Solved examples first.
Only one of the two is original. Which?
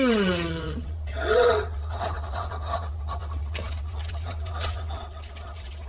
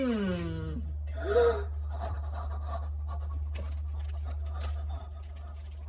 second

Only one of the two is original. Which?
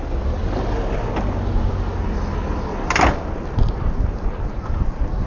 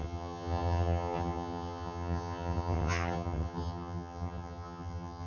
first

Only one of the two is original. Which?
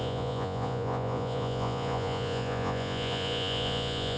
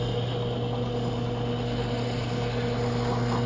second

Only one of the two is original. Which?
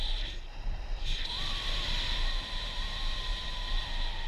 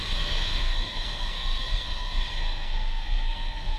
first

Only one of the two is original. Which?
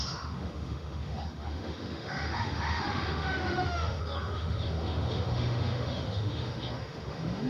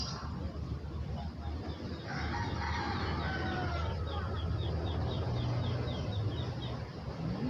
second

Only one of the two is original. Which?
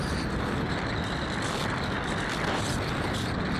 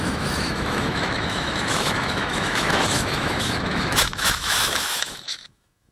first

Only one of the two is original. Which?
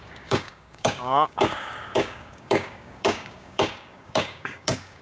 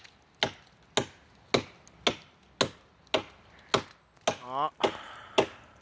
second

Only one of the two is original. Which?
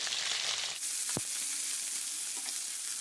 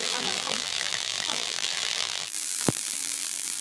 first